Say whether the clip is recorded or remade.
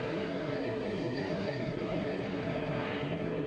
remade